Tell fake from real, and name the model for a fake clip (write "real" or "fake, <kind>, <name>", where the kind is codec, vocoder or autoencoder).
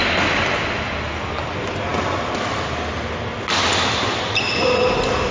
real